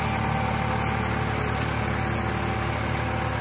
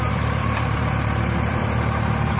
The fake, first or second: second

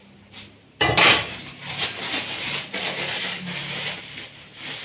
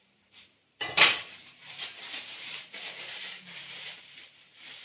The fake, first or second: second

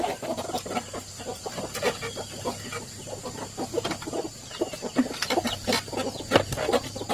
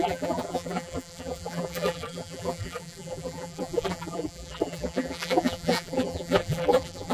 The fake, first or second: second